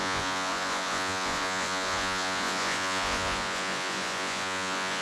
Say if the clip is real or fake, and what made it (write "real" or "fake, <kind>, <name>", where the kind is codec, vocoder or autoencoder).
fake, vocoder, Vocos